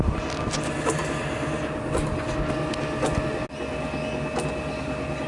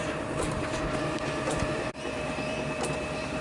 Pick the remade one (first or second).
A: second